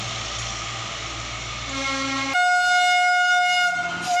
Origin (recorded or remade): recorded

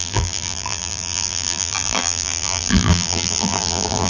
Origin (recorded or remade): remade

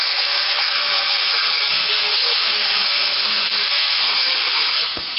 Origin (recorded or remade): remade